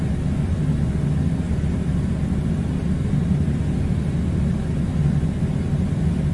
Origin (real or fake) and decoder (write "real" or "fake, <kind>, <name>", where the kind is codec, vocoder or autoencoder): real